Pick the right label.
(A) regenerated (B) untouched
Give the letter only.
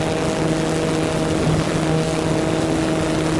B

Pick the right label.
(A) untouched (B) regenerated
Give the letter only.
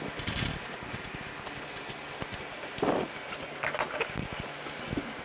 A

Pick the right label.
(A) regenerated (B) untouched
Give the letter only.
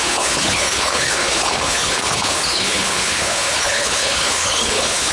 A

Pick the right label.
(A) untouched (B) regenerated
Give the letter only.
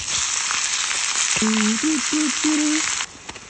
A